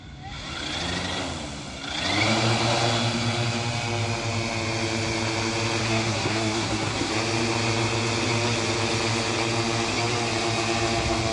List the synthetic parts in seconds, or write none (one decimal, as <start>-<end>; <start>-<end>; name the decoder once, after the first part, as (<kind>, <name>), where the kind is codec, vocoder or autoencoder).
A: 5.8-7.1 (codec, SNAC)